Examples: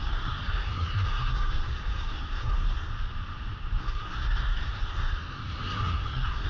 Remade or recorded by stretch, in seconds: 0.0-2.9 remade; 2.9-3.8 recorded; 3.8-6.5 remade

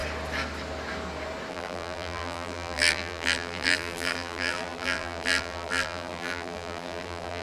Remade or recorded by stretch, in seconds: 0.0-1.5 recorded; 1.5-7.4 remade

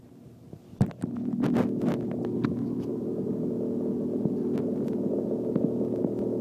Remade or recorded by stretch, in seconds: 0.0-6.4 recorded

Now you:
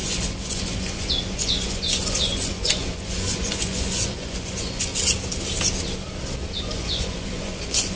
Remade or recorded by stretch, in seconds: 0.0-4.9 remade; 4.9-6.6 recorded; 6.6-8.0 remade

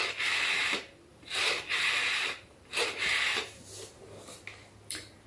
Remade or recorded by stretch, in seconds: 0.0-1.1 recorded; 1.1-4.0 remade; 4.0-5.3 recorded